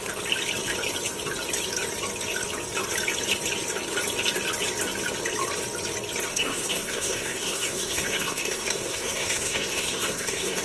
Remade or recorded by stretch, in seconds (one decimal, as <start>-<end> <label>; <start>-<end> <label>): 0.0-6.3 recorded; 6.3-10.6 remade